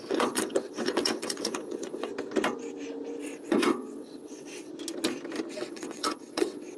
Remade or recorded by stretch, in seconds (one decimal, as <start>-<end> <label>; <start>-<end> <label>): 0.0-2.1 remade; 2.1-3.2 recorded; 3.2-4.7 remade; 4.7-5.5 recorded; 5.5-6.8 remade